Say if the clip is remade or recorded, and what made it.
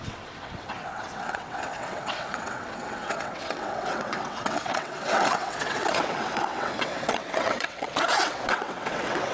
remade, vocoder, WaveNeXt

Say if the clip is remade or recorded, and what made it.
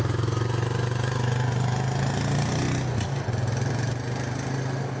recorded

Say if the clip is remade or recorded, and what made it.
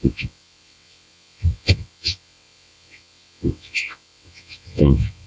remade, vocoder, WaveNeXt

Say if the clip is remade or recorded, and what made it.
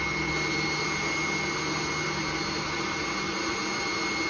recorded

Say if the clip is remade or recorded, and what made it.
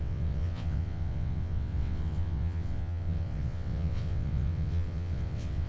remade, vocoder, WaveNeXt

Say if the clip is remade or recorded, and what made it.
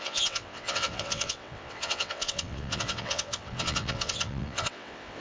remade, vocoder, WaveNeXt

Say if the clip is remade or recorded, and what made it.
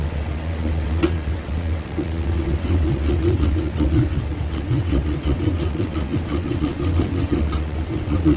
remade, vocoder, WaveNeXt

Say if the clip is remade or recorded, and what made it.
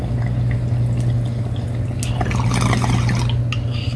recorded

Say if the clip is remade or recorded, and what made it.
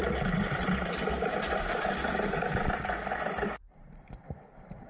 recorded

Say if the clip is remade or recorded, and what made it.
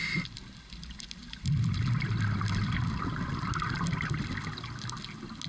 recorded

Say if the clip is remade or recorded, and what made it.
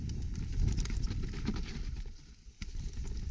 recorded